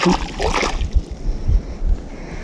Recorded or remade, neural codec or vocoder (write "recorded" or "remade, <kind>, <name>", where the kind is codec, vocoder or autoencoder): recorded